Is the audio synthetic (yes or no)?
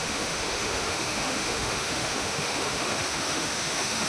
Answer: yes